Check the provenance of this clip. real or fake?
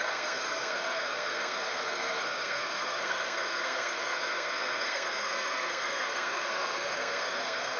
fake